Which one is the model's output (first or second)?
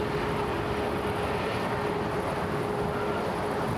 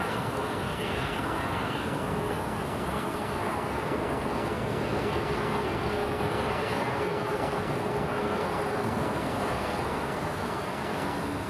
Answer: second